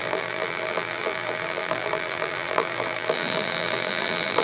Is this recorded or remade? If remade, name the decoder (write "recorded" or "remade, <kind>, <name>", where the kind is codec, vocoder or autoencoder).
remade, vocoder, BigVGAN v2